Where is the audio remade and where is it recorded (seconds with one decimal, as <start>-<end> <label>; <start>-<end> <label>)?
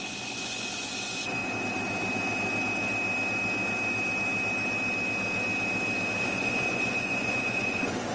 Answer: 0.0-1.4 remade; 1.4-6.2 recorded; 6.2-8.1 remade